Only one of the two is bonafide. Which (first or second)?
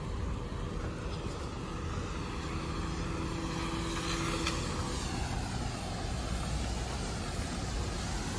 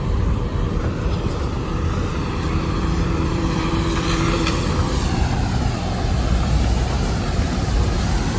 first